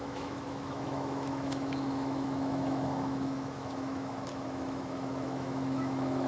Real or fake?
fake